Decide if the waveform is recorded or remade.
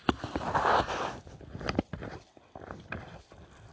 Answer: remade